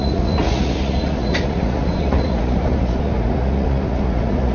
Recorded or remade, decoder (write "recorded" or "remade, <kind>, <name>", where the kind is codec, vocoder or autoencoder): remade, vocoder, Vocos